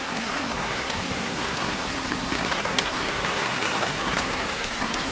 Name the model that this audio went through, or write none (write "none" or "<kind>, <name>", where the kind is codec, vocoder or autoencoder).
codec, SNAC